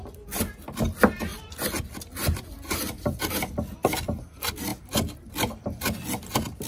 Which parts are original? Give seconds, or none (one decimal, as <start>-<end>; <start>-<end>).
0.0-6.7